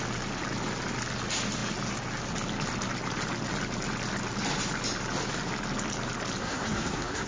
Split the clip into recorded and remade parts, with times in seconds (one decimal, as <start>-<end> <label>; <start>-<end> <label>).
0.0-6.4 recorded; 6.4-7.3 remade